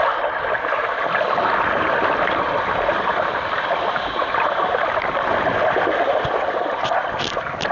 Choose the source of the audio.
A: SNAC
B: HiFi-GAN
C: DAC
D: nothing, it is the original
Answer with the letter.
D